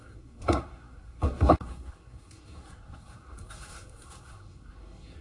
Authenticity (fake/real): fake